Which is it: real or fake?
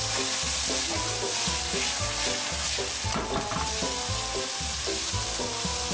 real